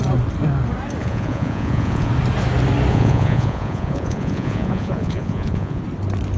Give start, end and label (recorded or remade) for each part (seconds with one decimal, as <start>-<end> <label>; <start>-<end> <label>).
0.0-1.0 recorded; 1.0-2.1 remade; 2.1-2.9 recorded; 2.9-5.8 remade; 5.8-6.4 recorded